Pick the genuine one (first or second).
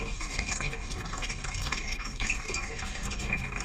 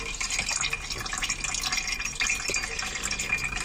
second